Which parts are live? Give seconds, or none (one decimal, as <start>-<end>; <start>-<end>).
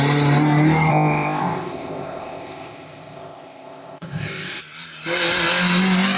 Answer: 0.0-0.9; 4.6-6.2